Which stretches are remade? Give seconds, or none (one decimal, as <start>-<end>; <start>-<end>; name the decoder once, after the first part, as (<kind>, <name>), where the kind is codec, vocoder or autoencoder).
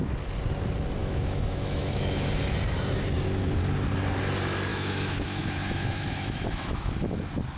1.0-2.3 (autoencoder, DAC-VAE); 4.7-6.9